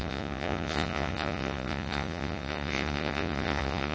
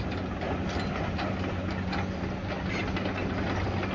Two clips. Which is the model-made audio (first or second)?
first